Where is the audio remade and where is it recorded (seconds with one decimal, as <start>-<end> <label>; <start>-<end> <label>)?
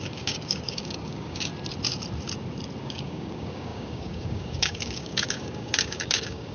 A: 0.0-1.5 remade; 1.5-2.8 recorded; 2.8-6.5 remade